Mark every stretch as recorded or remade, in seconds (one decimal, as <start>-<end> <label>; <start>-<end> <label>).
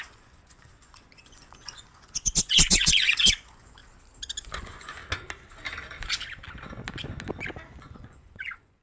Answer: 0.0-3.8 remade; 3.8-4.5 recorded; 4.5-5.0 remade; 5.0-7.7 recorded; 7.7-8.8 remade